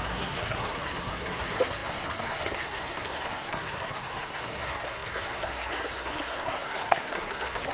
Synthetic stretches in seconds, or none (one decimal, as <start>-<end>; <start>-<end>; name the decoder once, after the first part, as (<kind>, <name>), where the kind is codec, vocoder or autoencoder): 0.0-7.7 (codec, SNAC)

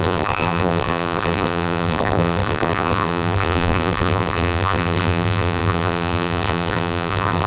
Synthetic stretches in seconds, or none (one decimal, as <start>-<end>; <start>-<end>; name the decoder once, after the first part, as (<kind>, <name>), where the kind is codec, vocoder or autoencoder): 0.0-7.5 (vocoder, BigVGAN v2)

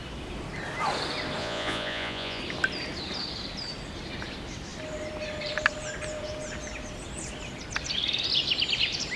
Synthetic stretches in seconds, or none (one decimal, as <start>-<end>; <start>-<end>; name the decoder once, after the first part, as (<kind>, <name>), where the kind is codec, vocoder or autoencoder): 1.4-2.4 (vocoder, Vocos)

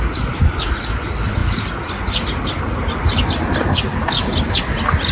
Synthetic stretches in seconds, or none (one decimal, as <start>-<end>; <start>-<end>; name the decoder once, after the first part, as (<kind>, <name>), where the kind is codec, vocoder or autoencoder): none

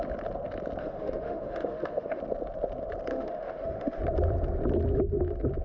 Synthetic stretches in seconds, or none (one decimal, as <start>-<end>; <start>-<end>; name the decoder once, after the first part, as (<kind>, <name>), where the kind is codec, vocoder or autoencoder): 0.8-2.2 (autoencoder, DAC-VAE); 3.1-4.0

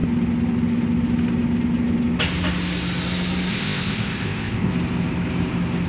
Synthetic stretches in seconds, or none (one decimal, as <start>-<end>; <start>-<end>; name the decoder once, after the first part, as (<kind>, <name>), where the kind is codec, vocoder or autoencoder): 3.5-4.7 (codec, ZipCodec)